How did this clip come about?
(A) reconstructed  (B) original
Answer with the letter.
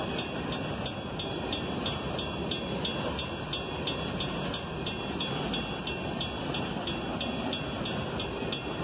B